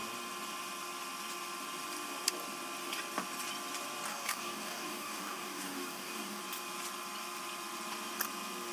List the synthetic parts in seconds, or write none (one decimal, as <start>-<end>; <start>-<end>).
4.1-6.4